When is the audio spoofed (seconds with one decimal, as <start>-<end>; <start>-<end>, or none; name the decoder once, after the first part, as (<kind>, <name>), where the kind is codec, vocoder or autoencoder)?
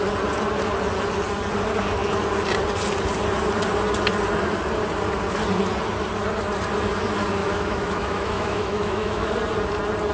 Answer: 7.4-9.3 (autoencoder, DAC-VAE)